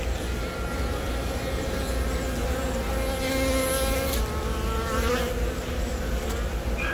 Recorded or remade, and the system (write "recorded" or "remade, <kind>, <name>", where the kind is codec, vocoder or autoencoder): recorded